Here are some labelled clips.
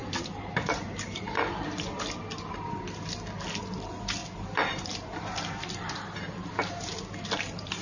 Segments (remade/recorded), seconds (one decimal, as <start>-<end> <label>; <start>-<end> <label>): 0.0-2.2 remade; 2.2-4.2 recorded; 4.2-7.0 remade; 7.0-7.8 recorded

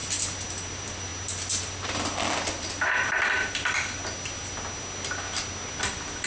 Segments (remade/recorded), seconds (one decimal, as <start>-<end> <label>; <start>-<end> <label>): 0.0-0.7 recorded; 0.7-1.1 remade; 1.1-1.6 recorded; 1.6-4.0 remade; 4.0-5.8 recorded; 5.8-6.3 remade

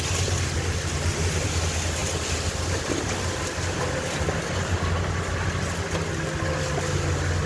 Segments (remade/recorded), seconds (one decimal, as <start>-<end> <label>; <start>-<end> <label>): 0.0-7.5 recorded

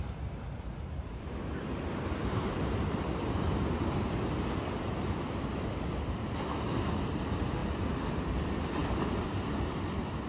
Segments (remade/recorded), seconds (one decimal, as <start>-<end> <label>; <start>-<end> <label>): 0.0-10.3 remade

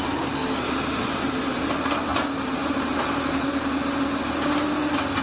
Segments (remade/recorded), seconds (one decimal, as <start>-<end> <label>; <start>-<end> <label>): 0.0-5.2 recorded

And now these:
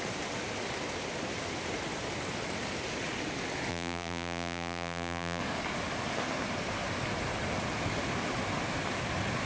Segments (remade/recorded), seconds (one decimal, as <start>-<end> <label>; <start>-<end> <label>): 0.0-3.7 recorded; 3.7-5.4 remade; 5.4-9.5 recorded

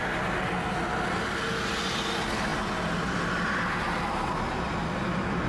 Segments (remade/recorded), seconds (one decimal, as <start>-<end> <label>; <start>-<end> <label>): 0.0-5.5 recorded